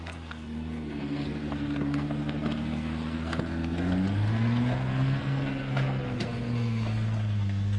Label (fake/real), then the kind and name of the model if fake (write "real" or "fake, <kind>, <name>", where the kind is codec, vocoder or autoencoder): fake, codec, SNAC